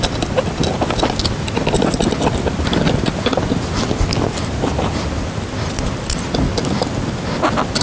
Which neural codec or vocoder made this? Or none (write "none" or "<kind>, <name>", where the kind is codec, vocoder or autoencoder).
none